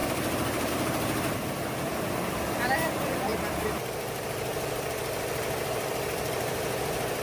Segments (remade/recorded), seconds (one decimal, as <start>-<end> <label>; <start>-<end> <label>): 0.0-7.2 remade